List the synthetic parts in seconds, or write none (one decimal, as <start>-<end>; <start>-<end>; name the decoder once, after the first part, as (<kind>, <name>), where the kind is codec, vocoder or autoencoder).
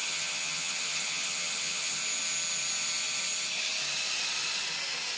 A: 0.0-2.0 (vocoder, HiFi-GAN)